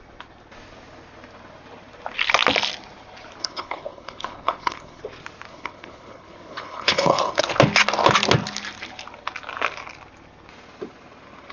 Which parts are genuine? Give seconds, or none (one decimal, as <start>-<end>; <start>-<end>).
0.0-3.4; 5.0-5.5; 7.4-11.5